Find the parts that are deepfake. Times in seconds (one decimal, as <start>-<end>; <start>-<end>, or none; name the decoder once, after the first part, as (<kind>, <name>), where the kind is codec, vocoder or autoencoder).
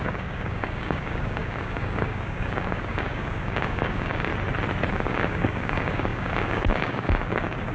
0.0-4.3 (codec, DAC); 4.9-7.7